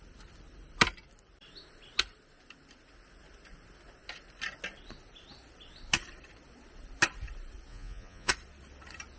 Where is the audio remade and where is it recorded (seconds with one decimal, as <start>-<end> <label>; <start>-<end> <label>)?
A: 0.0-7.7 recorded; 7.7-8.3 remade; 8.3-9.2 recorded